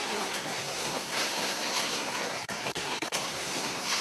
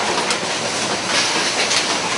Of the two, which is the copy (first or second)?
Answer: first